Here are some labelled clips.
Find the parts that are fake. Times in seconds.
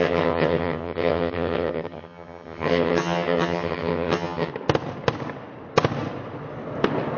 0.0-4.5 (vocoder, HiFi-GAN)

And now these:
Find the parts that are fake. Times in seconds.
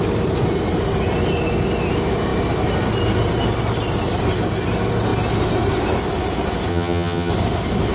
6.7-7.3 (vocoder, HiFi-GAN)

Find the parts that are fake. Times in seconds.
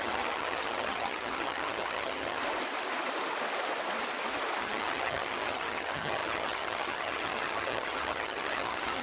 0.0-2.4 (vocoder, HiFi-GAN); 4.6-9.0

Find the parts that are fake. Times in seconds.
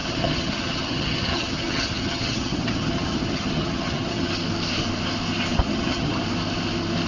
0.0-4.3 (vocoder, HiFi-GAN); 5.6-6.2